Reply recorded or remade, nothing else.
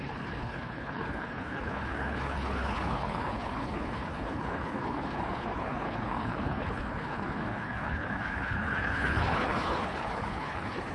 remade